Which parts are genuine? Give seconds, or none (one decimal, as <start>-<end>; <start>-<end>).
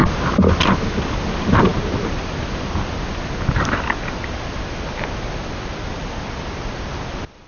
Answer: 0.0-7.5